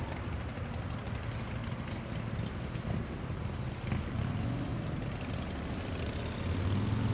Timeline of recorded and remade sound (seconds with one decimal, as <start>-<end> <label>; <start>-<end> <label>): 0.0-7.1 recorded